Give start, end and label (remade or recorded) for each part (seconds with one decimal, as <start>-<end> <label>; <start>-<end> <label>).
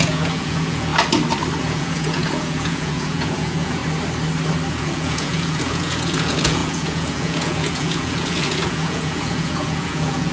0.0-0.9 remade; 0.9-1.6 recorded; 1.6-3.8 remade; 3.8-4.7 recorded; 4.7-10.3 remade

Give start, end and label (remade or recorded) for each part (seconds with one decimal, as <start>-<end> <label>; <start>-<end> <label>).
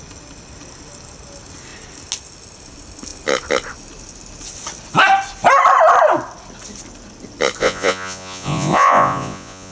0.0-7.6 recorded; 7.6-9.7 remade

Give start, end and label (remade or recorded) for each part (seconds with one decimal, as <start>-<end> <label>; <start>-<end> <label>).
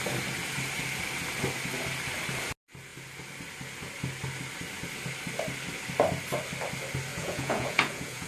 0.0-7.1 recorded; 7.1-8.3 remade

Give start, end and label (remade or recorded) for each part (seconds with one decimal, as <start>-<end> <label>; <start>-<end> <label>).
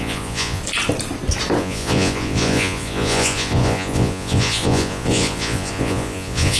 0.0-0.6 remade; 0.6-1.6 recorded; 1.6-6.6 remade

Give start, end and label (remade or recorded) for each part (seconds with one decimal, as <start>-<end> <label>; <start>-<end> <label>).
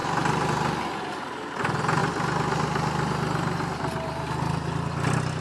0.0-5.4 recorded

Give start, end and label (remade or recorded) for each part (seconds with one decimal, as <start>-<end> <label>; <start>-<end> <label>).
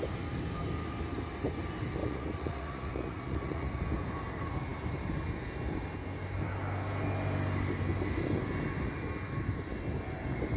0.0-2.0 recorded; 2.0-3.8 remade; 3.8-10.6 recorded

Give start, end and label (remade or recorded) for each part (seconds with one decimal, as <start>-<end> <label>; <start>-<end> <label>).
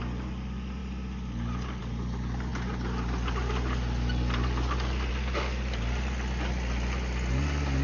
0.0-7.8 recorded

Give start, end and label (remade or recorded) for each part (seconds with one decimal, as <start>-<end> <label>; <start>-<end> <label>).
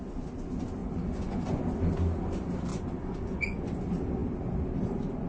0.0-0.8 recorded; 0.8-1.6 remade; 1.6-2.7 recorded; 2.7-3.6 remade; 3.6-5.3 recorded